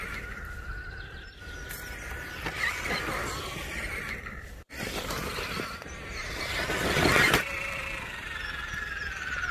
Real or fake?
fake